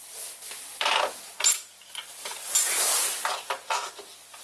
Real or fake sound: real